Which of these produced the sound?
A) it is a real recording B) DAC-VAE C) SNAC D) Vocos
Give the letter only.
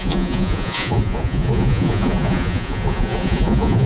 D